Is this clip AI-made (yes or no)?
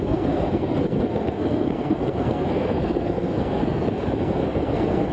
yes